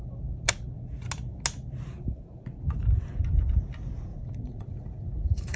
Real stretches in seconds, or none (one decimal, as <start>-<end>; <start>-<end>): 0.0-4.1